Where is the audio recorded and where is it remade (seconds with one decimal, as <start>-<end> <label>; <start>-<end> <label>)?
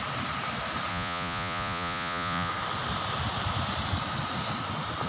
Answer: 0.0-0.9 recorded; 0.9-2.5 remade; 2.5-5.1 recorded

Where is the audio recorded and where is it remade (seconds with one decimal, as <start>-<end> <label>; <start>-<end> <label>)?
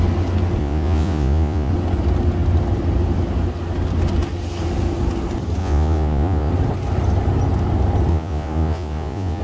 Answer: 0.0-0.6 recorded; 0.6-1.7 remade; 1.7-5.6 recorded; 5.6-6.5 remade; 6.5-8.1 recorded; 8.1-9.4 remade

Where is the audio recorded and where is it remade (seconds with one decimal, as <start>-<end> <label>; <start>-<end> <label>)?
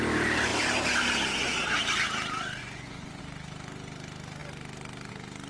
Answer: 0.0-2.6 recorded; 2.6-3.2 remade; 3.2-5.5 recorded